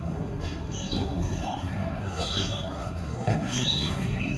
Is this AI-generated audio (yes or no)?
yes